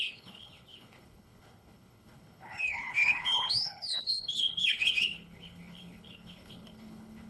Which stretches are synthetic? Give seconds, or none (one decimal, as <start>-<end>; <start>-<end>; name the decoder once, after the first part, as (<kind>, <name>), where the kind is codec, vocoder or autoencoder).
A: 0.0-7.3 (codec, HILCodec)